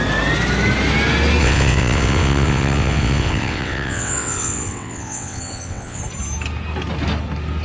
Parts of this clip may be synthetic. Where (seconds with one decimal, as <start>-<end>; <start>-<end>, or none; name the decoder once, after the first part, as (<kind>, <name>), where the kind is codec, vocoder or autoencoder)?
1.4-6.0 (vocoder, WaveNeXt)